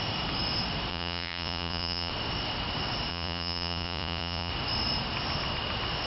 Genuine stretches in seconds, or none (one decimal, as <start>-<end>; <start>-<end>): 0.0-0.9; 2.1-3.1; 4.5-6.1